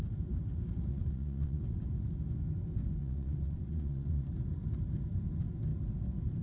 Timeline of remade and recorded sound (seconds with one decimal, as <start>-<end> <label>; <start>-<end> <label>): 0.0-0.9 recorded; 0.9-1.6 remade; 1.6-3.0 recorded; 3.0-4.3 remade; 4.3-6.4 recorded